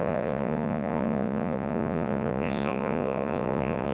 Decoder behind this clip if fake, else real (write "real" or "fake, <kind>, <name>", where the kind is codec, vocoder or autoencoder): fake, vocoder, Vocos